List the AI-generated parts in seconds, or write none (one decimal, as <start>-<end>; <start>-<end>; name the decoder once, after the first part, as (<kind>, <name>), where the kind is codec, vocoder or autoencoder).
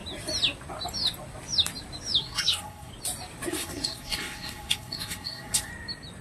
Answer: 2.2-2.9 (codec, SNAC); 3.5-5.7